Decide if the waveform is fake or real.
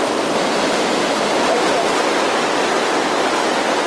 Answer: real